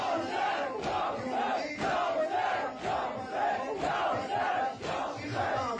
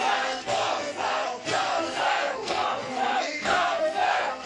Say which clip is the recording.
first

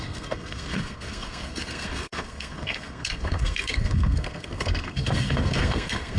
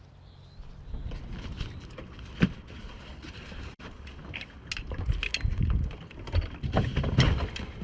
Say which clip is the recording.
second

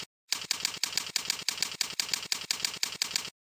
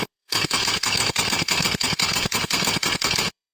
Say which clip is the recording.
first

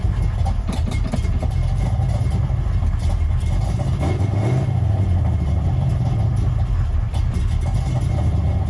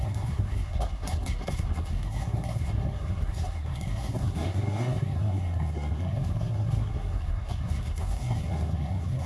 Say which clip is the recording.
first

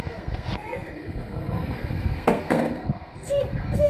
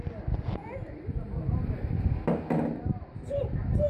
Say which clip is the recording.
second